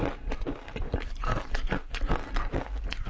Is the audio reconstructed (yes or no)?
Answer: no